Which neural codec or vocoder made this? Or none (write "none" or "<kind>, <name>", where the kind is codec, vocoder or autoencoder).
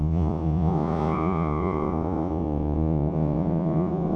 vocoder, Vocos